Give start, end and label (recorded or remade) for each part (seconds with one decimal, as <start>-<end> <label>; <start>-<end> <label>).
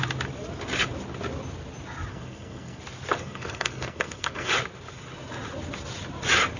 0.0-2.1 recorded; 2.1-2.8 remade; 2.8-3.2 recorded; 3.2-4.5 remade; 4.5-6.6 recorded